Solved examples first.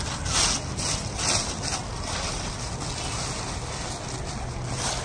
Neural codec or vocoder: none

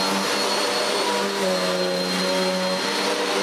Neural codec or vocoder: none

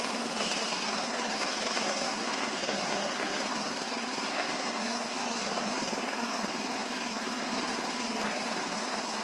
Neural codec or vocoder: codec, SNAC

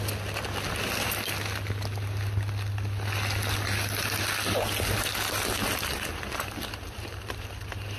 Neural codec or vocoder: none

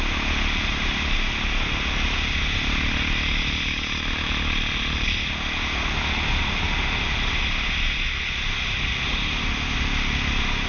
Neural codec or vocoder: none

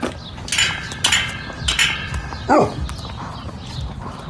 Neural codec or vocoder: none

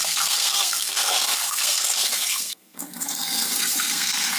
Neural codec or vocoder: codec, SNAC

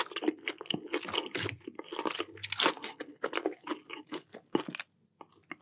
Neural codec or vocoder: none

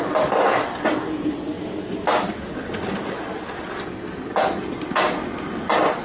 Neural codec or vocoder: none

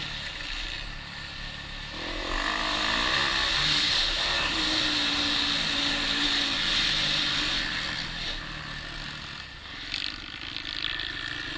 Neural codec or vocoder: none